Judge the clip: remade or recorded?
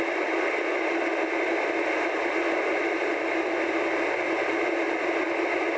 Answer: recorded